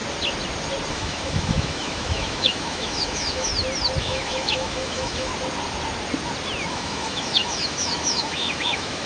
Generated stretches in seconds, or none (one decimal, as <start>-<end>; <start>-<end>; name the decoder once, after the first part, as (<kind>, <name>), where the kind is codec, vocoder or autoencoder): 0.9-3.5 (autoencoder, DAC-VAE); 4.0-5.3; 6.7-9.1